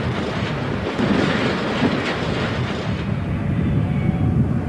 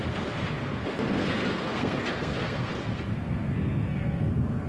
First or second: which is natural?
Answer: first